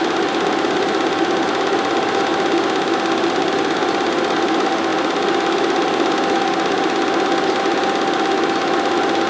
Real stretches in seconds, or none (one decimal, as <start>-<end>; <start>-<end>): 0.0-9.3